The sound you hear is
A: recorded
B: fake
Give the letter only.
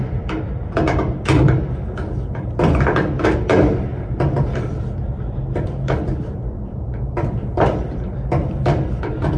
B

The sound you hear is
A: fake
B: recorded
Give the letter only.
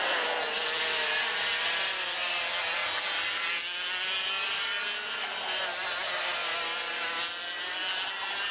B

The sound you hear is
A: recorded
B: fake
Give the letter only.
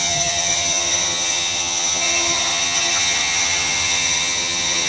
B